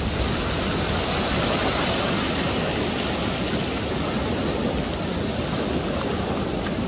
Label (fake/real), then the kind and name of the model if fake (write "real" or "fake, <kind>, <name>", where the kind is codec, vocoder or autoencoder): real